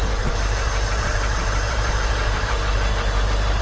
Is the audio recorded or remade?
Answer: remade